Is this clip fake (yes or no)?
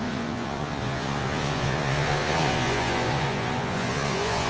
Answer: yes